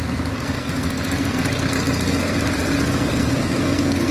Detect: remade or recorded remade